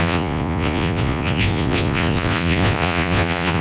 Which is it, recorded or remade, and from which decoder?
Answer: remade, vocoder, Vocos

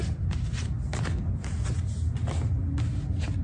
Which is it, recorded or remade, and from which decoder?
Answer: recorded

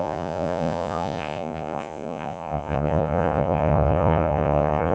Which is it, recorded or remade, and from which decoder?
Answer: remade, vocoder, Vocos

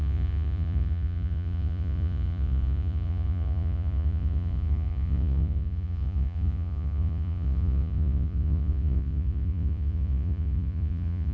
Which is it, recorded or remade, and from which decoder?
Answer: remade, vocoder, Vocos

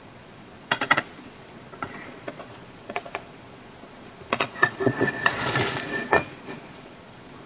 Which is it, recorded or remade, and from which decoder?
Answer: remade, vocoder, Vocos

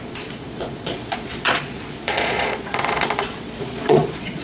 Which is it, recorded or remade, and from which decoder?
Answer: remade, vocoder, Vocos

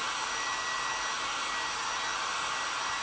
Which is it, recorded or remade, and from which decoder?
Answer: recorded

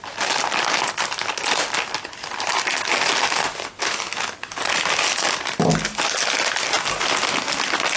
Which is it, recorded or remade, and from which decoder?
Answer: recorded